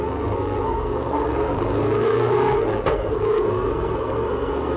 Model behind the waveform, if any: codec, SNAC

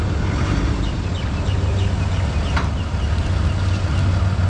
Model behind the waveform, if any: none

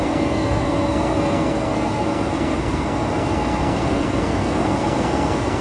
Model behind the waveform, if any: codec, SNAC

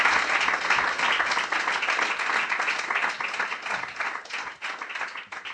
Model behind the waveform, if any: none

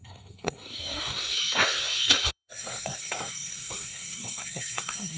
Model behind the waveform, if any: codec, SNAC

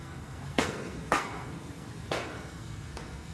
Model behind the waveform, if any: codec, SNAC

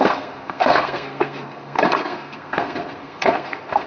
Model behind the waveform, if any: codec, SNAC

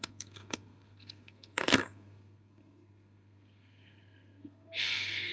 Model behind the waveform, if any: codec, SNAC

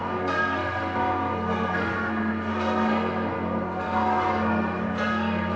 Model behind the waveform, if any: codec, SNAC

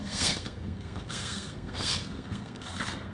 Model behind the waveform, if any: codec, SNAC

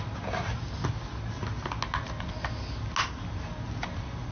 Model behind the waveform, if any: none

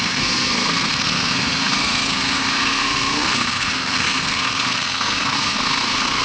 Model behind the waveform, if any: codec, SNAC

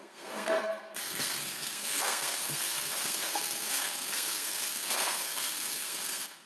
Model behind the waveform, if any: codec, SNAC